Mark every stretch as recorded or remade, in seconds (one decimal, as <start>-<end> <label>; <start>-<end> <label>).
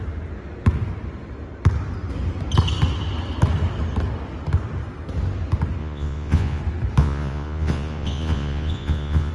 0.0-5.8 recorded; 5.8-6.6 remade; 6.6-7.0 recorded; 7.0-9.3 remade